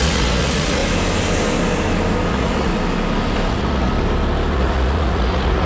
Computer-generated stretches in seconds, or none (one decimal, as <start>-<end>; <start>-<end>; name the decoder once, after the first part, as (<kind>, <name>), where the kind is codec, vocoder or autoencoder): 0.0-0.8 (vocoder, Vocos); 2.3-2.7; 3.5-3.9; 4.5-5.7